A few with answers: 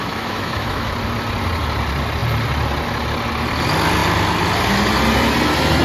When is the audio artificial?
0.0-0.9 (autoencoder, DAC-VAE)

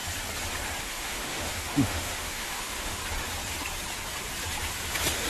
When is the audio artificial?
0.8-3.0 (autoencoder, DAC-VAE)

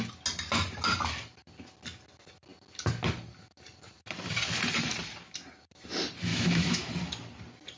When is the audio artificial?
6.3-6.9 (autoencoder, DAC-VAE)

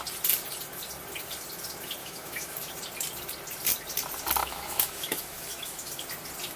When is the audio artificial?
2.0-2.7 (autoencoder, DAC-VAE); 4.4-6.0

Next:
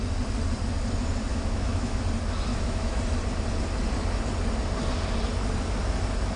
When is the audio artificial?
1.3-2.0 (autoencoder, DAC-VAE); 2.5-3.0

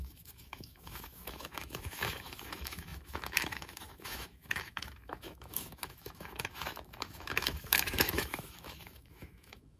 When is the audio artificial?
0.0-9.8 (autoencoder, DAC-VAE)

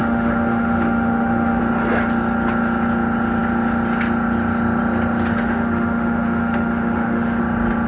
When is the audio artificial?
0.0-1.6 (autoencoder, DAC-VAE); 5.3-7.4